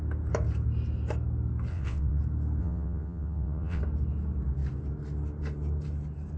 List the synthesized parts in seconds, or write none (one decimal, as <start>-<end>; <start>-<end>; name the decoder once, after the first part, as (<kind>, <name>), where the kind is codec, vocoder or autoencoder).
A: 1.7-2.2 (vocoder, WaveNeXt); 2.6-3.8